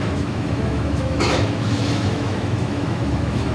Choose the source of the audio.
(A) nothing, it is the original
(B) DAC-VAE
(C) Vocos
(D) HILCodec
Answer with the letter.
B